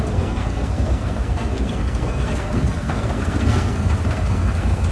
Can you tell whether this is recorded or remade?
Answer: remade